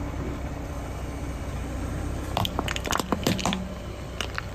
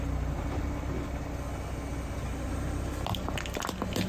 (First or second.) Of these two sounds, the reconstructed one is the first